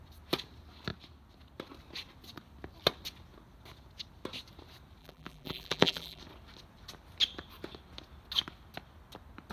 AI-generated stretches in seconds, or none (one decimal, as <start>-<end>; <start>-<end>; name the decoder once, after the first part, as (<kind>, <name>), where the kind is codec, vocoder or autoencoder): 5.0-6.2 (vocoder, BigVGAN v2)